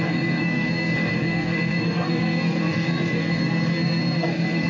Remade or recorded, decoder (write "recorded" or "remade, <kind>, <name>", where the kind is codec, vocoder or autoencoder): remade, codec, SNAC